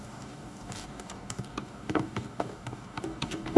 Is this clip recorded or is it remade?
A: remade